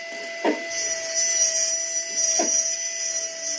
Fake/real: real